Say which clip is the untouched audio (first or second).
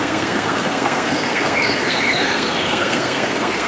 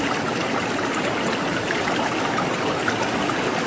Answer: second